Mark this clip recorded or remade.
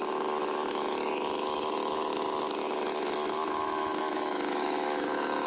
remade